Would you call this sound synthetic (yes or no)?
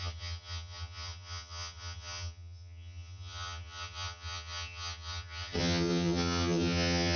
yes